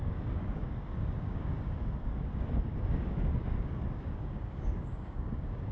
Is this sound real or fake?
fake